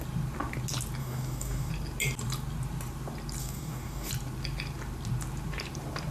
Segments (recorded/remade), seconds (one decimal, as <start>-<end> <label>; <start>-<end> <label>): 0.0-1.0 recorded; 1.0-1.7 remade; 1.7-3.4 recorded; 3.4-4.1 remade; 4.1-6.1 recorded